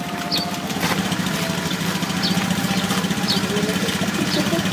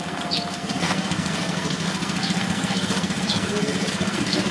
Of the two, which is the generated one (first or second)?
second